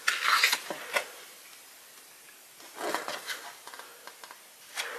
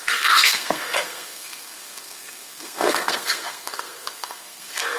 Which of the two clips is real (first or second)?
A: first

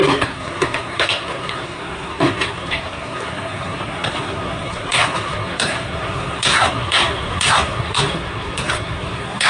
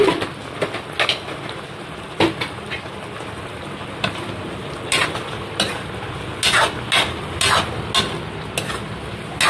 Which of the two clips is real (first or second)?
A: second